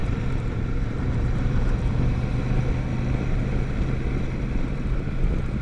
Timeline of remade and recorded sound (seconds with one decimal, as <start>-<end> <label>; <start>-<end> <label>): 0.0-2.3 remade; 2.3-5.6 recorded